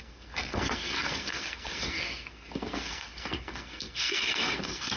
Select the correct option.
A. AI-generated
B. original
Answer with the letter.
A